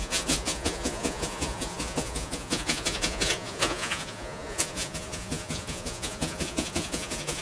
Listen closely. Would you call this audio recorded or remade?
remade